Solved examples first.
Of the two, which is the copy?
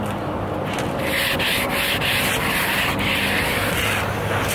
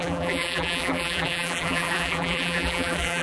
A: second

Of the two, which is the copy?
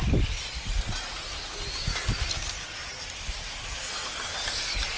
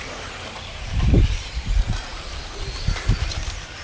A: second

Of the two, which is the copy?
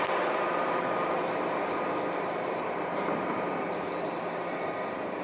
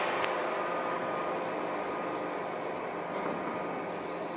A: first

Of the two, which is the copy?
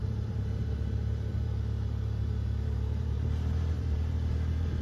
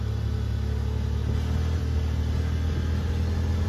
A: first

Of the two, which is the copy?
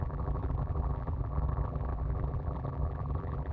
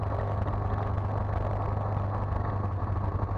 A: first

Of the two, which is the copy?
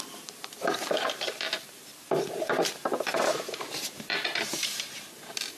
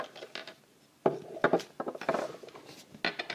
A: first